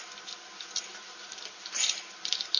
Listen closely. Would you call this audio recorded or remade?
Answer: recorded